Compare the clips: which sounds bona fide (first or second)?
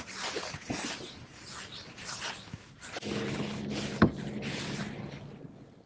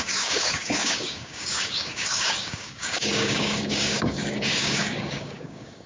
first